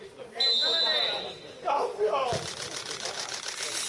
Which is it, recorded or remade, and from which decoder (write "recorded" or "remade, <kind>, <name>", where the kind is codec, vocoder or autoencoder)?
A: recorded